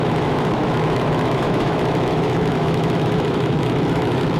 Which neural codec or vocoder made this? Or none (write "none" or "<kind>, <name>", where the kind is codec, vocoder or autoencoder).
autoencoder, DAC-VAE